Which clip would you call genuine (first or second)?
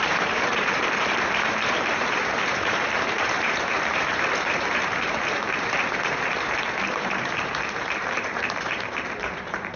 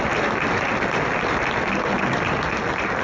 second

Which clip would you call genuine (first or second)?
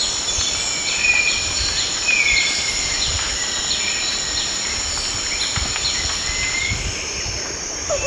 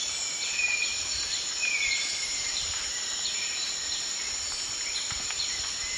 first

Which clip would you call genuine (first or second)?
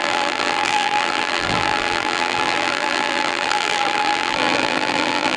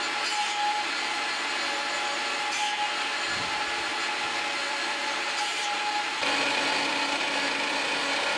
second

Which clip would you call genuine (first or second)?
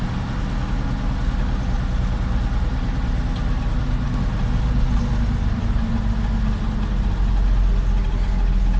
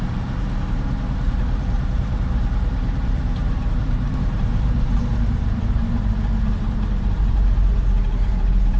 first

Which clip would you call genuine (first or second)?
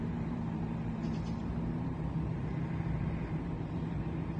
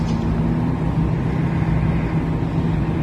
second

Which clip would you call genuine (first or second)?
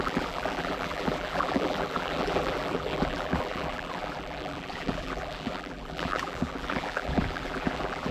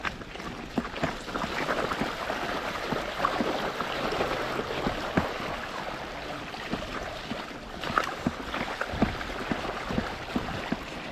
second